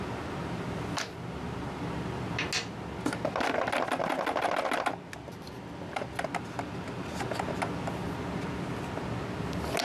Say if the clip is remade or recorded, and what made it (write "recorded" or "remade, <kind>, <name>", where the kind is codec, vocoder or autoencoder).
recorded